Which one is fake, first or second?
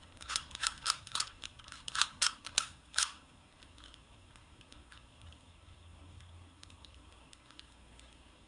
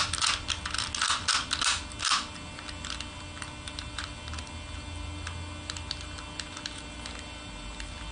first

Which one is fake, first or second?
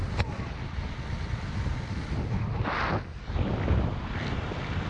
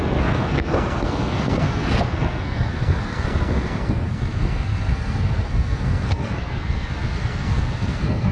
second